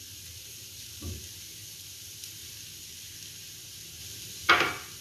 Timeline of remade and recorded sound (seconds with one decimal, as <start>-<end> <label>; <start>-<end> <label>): 0.0-2.4 recorded; 2.4-3.3 remade; 3.3-5.0 recorded

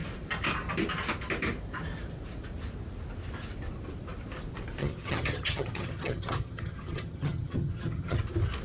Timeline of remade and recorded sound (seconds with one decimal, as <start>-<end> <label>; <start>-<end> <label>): 0.0-4.8 recorded; 4.8-8.2 remade; 8.2-8.6 recorded

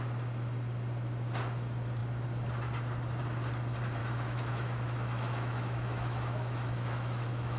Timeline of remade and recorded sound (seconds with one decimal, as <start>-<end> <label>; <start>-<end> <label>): 0.0-4.0 recorded; 4.0-7.6 remade

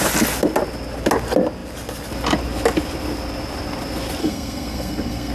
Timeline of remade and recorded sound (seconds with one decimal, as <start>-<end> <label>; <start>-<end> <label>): 0.0-4.2 recorded; 4.2-5.3 remade

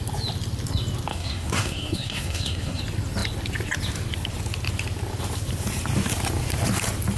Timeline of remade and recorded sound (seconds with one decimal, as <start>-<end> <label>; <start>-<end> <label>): 0.0-1.1 recorded; 1.1-2.8 remade; 2.8-7.2 recorded

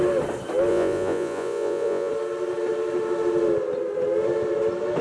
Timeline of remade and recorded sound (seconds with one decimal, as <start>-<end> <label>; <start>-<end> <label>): 0.0-0.7 recorded; 0.7-2.1 remade; 2.1-5.0 recorded